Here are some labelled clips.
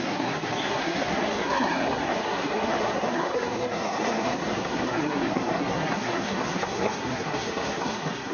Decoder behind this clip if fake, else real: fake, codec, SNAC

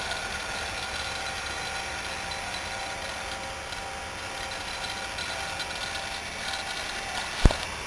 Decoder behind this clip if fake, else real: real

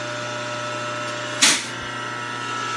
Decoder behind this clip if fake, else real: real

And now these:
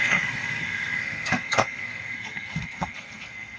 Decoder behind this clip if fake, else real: fake, codec, SNAC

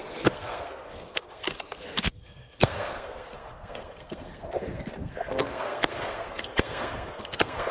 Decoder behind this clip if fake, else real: fake, codec, SNAC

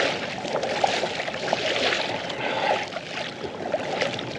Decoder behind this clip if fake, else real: real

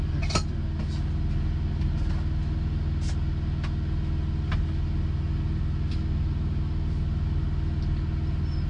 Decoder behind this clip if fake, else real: real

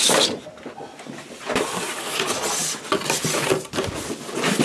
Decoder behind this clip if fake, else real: real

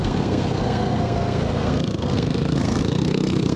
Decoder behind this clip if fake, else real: fake, codec, SNAC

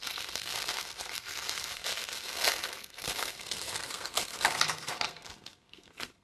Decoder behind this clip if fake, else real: fake, codec, SNAC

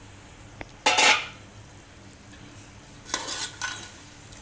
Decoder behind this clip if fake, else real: real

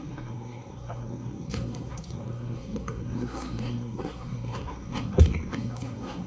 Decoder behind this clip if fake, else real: fake, codec, SNAC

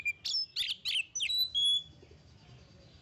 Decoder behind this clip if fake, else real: real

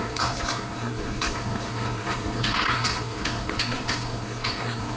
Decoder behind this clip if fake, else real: fake, codec, SNAC